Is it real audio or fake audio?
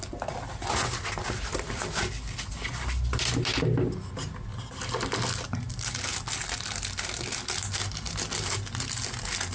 real